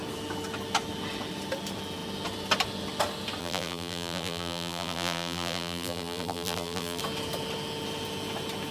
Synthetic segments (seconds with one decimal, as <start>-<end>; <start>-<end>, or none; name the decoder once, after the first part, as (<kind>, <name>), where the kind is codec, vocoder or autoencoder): 3.4-7.0 (vocoder, BigVGAN v2)